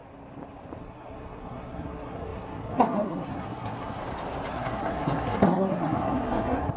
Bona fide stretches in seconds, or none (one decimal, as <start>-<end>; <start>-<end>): 0.0-0.8; 4.0-4.5